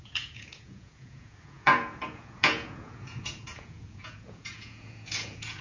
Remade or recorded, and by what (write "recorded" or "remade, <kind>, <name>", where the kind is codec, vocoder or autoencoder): remade, vocoder, Vocos